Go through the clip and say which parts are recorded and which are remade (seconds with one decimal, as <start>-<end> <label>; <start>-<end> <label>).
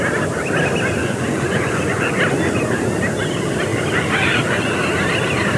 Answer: 0.0-1.0 recorded; 1.0-2.2 remade; 2.2-5.6 recorded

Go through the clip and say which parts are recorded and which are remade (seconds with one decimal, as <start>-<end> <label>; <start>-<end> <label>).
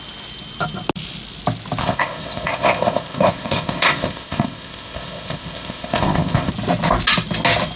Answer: 0.0-1.8 recorded; 1.8-6.5 remade; 6.5-7.8 recorded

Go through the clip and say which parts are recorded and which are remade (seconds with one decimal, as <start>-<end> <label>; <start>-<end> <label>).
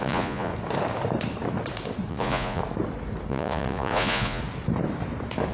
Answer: 0.0-0.5 remade; 0.5-2.1 recorded; 2.1-2.6 remade; 2.6-3.3 recorded; 3.3-4.4 remade; 4.4-5.5 recorded